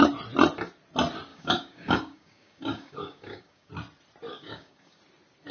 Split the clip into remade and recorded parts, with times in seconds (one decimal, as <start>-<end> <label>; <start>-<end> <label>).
0.0-1.3 recorded; 1.3-3.7 remade; 3.7-4.3 recorded; 4.3-5.0 remade; 5.0-5.5 recorded